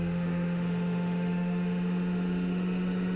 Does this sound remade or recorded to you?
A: remade